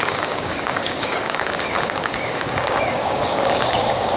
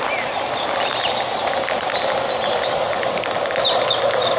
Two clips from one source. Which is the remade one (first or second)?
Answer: first